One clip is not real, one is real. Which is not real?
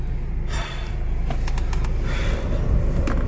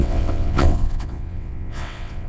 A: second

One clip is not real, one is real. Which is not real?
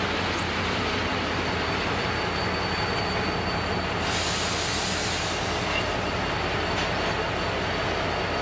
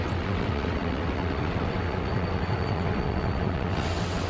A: second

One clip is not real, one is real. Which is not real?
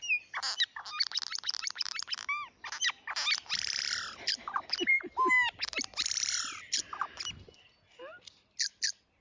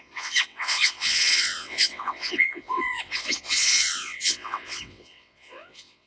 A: second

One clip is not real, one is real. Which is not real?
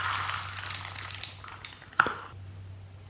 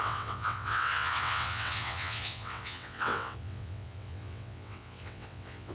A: second